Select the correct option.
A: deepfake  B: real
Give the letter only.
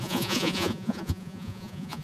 A